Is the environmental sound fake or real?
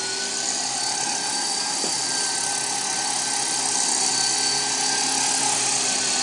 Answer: real